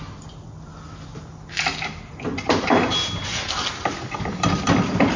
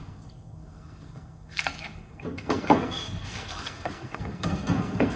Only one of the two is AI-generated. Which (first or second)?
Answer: second